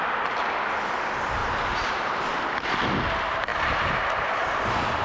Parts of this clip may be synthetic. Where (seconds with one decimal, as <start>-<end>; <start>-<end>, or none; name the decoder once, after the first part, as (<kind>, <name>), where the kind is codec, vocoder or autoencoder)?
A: 1.4-2.3 (vocoder, BigVGAN v2); 3.5-5.0